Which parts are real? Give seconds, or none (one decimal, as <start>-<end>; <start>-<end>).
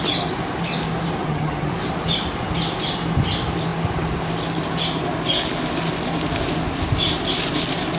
0.0-1.2; 1.7-8.0